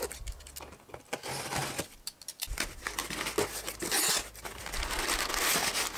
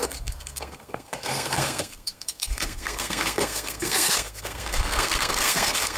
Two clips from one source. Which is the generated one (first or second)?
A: second